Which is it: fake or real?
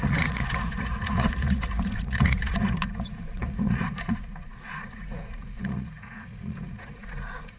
fake